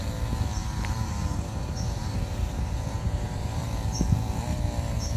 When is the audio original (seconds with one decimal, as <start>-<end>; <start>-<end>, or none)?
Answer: 0.0-0.6; 3.7-5.2